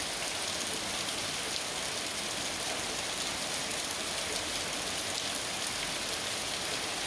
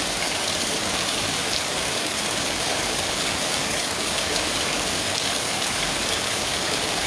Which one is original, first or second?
first